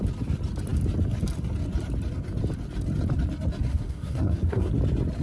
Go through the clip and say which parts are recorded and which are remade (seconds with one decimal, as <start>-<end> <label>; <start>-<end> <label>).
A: 0.0-3.7 recorded; 3.7-4.7 remade; 4.7-5.2 recorded